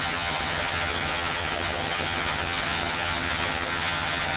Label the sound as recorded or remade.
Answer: remade